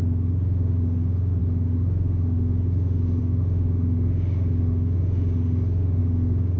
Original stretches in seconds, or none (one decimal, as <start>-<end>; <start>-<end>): none